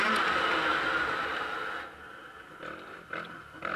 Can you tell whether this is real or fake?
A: real